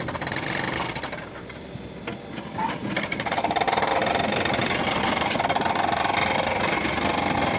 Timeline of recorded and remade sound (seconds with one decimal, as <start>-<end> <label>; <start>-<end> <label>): 0.0-7.6 recorded